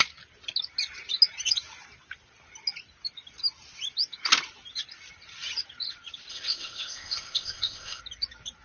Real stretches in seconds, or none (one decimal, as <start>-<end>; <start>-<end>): 0.0-6.3; 8.0-8.6